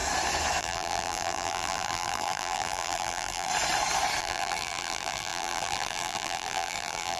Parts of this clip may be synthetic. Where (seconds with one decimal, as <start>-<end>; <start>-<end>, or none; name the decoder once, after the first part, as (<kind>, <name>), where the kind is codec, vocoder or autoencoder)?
0.6-3.5 (vocoder, BigVGAN v2); 4.2-7.2